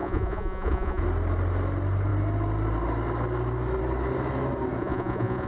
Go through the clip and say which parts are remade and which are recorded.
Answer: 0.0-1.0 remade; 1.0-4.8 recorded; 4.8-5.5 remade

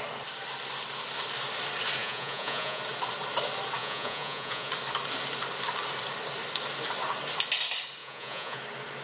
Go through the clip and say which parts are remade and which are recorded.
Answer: 0.0-2.0 recorded; 2.0-2.8 remade; 2.8-3.8 recorded; 3.8-4.7 remade; 4.7-8.0 recorded; 8.0-8.6 remade; 8.6-9.0 recorded

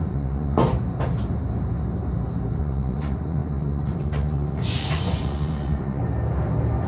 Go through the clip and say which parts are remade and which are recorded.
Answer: 0.0-0.6 remade; 0.6-2.6 recorded; 2.6-6.0 remade; 6.0-6.9 recorded

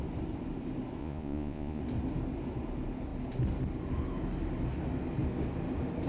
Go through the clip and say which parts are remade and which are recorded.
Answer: 0.0-1.0 recorded; 1.0-1.8 remade; 1.8-6.1 recorded

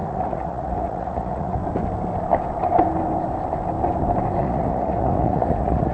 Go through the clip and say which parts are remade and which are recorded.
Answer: 0.0-1.6 remade; 1.6-4.4 recorded; 4.4-5.9 remade